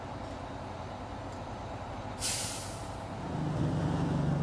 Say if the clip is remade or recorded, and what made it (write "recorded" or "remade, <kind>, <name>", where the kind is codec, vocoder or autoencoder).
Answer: recorded